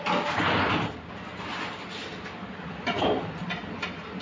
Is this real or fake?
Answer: real